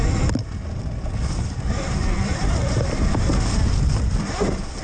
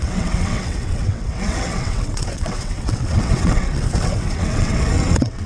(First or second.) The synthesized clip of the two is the second